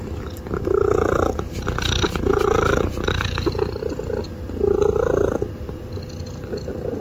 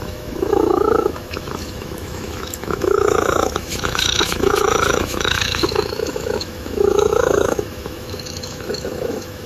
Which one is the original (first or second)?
first